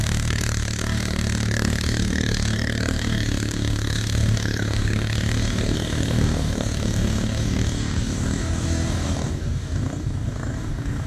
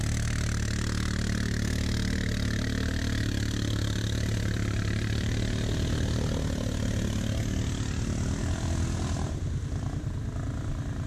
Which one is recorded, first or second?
second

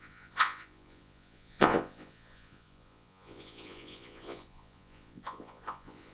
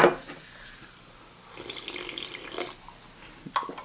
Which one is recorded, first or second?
second